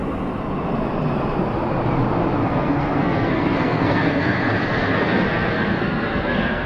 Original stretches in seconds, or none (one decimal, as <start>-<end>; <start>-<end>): 0.0-2.4